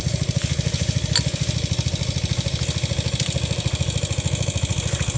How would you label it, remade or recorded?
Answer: recorded